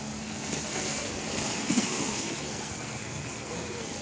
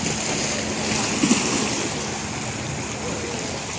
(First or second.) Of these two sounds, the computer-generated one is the first